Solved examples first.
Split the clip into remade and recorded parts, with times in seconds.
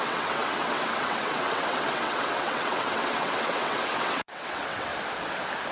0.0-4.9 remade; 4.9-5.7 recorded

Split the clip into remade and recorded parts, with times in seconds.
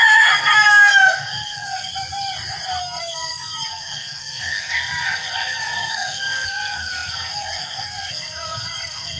0.0-1.9 remade; 1.9-2.8 recorded; 2.8-9.2 remade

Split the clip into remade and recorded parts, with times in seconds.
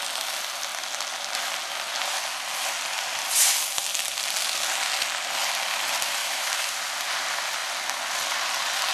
0.0-6.2 recorded; 6.2-6.7 remade; 6.7-8.9 recorded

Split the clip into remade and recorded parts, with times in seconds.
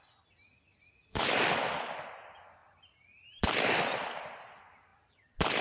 0.0-0.7 recorded; 0.7-1.3 remade; 1.3-5.6 recorded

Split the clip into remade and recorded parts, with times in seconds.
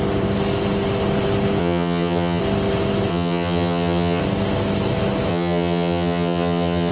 0.0-1.6 recorded; 1.6-2.4 remade; 2.4-3.1 recorded; 3.1-4.2 remade; 4.2-5.3 recorded; 5.3-6.9 remade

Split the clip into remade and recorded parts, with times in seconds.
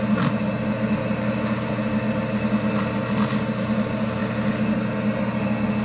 0.0-5.8 recorded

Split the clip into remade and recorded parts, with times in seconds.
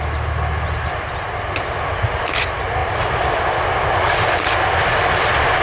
0.0-5.6 recorded